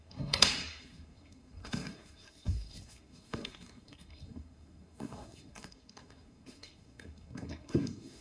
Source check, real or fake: fake